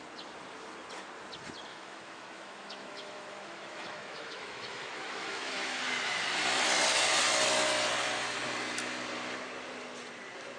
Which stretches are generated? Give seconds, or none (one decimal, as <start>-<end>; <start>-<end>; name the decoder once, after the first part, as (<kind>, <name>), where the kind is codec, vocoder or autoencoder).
1.7-5.8 (autoencoder, DAC-VAE)